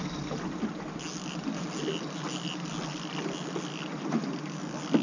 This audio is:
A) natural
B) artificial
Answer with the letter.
A